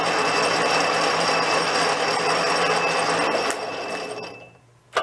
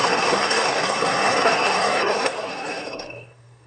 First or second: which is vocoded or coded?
second